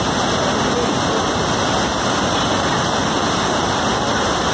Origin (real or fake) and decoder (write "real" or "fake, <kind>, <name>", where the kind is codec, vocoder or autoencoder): real